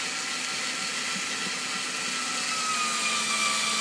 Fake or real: real